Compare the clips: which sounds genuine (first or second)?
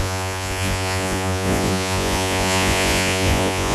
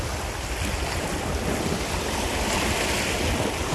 second